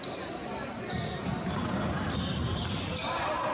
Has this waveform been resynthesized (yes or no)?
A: no